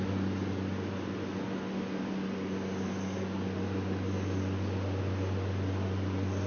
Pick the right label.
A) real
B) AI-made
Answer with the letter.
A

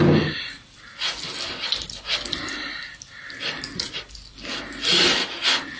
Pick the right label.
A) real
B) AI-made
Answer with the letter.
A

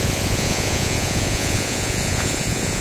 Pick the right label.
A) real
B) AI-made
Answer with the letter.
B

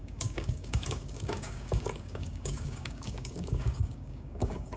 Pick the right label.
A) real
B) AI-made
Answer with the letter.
B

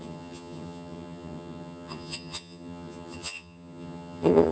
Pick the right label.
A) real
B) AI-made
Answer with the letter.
B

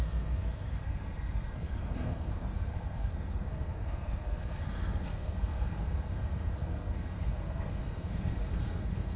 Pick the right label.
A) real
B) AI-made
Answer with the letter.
B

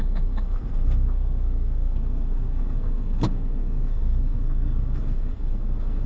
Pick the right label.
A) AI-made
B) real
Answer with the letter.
A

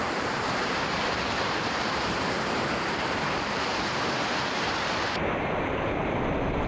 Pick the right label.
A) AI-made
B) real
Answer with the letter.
A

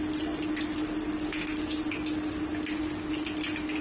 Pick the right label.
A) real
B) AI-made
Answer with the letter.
A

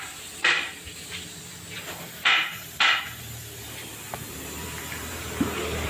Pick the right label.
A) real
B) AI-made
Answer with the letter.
B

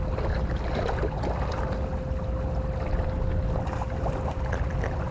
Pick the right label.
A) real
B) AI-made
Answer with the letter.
A